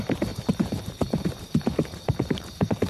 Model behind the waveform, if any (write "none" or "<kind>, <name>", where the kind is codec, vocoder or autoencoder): vocoder, BigVGAN v2